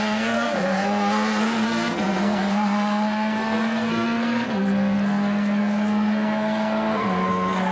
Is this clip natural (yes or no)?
no